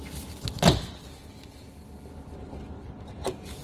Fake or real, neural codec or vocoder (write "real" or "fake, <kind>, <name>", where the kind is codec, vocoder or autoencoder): real